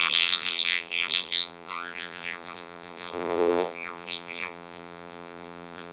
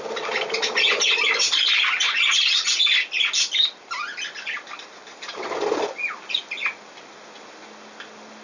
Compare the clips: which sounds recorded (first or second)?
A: second